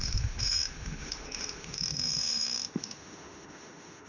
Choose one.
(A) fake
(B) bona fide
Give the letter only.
A